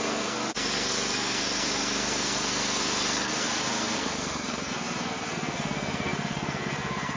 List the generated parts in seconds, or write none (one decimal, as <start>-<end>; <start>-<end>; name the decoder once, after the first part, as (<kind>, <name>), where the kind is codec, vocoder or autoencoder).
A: 0.0-7.2 (codec, SNAC)